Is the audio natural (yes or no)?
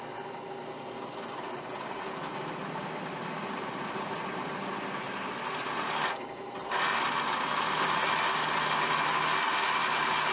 yes